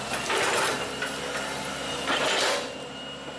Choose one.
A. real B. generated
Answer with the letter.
A